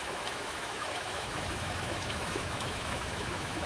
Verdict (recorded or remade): remade